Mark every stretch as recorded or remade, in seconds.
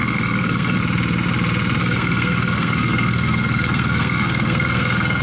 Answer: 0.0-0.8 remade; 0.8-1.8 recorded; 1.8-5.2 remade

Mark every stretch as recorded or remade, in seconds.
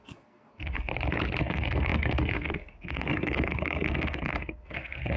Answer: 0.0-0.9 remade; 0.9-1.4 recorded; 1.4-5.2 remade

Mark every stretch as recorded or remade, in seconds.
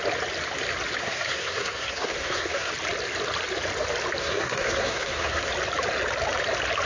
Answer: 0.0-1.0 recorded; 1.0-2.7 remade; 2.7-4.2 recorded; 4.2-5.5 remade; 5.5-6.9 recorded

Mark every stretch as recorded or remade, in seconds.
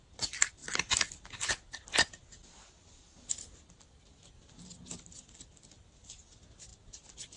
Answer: 0.0-7.4 recorded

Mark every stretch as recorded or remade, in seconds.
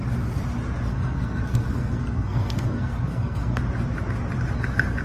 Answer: 0.0-0.9 recorded; 0.9-3.6 remade; 3.6-5.0 recorded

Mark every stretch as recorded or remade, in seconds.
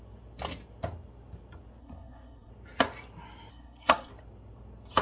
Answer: 0.0-1.8 recorded; 1.8-2.5 remade; 2.5-3.5 recorded; 3.5-4.1 remade; 4.1-5.0 recorded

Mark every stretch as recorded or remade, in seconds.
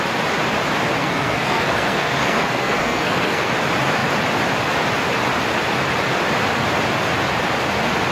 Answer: 0.0-1.0 recorded; 1.0-3.5 remade; 3.5-8.1 recorded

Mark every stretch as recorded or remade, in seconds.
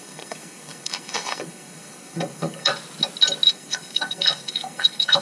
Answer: 0.0-2.7 remade; 2.7-3.5 recorded; 3.5-5.2 remade